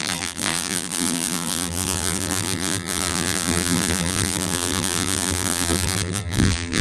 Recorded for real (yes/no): no